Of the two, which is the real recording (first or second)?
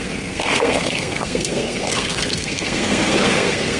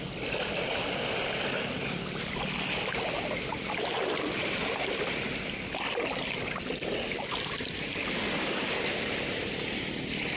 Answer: second